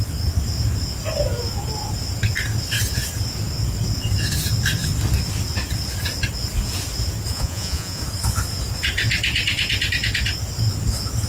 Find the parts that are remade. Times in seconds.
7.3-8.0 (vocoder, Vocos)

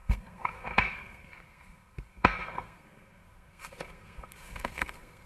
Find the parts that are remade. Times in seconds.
0.0-5.3 (codec, SNAC)

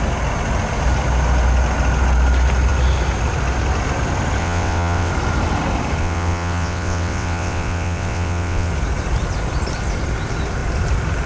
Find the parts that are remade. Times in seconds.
4.4-5.1 (vocoder, WaveNeXt); 6.0-8.7